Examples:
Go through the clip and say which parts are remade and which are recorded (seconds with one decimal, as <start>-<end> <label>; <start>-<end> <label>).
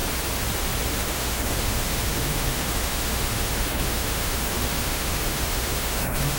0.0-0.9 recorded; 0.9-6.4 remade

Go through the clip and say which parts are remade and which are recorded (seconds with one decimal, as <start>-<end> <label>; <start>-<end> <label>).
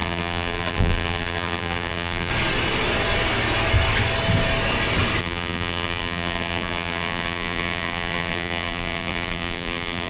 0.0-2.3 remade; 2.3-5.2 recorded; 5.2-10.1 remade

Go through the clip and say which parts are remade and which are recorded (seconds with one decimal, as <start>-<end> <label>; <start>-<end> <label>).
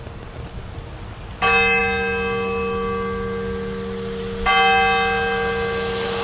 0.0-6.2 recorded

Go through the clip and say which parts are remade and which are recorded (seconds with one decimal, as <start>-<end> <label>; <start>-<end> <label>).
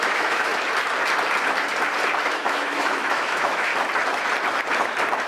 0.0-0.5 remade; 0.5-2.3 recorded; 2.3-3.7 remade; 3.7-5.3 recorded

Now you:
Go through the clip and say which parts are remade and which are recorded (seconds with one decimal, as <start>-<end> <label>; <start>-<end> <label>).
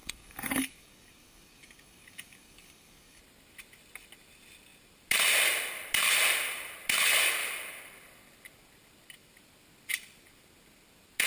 0.0-3.2 remade; 3.2-11.3 recorded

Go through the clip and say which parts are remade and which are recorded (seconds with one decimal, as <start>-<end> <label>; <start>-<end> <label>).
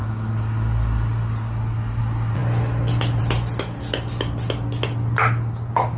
0.0-6.0 recorded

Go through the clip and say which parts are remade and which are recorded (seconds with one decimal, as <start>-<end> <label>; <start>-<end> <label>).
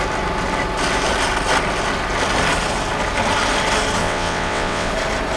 0.0-4.0 recorded; 4.0-4.9 remade; 4.9-5.4 recorded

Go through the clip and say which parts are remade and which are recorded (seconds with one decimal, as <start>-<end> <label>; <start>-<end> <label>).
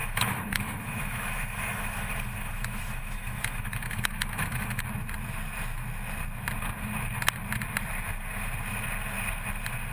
0.0-4.8 remade; 4.8-9.9 recorded